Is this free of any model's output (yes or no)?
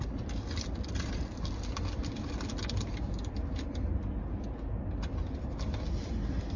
yes